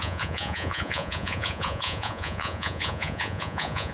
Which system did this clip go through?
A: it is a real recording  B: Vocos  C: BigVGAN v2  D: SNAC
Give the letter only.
B